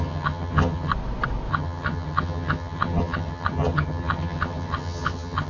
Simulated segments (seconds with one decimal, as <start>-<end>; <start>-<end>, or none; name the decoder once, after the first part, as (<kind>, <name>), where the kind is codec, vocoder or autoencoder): 0.0-0.9 (vocoder, HiFi-GAN); 1.5-5.5